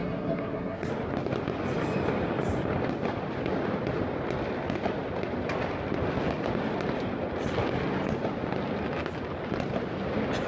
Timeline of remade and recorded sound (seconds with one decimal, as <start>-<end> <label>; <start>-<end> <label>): 0.0-0.9 remade; 0.9-10.5 recorded